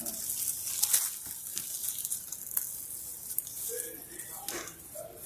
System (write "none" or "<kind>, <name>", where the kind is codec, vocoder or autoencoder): none